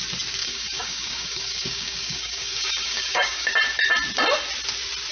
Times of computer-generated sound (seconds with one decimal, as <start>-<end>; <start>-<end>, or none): 0.4-3.5

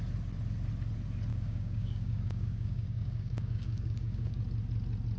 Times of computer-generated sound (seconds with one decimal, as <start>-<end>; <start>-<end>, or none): 1.3-4.4

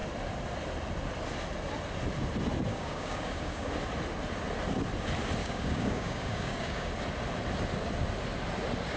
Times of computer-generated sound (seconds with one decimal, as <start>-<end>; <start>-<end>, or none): 2.7-3.7; 5.4-6.9

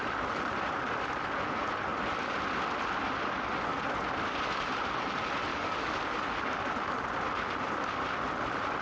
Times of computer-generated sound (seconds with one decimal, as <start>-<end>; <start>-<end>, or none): 5.5-6.0

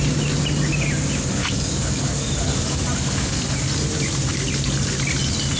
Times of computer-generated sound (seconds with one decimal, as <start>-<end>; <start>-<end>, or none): 1.4-3.4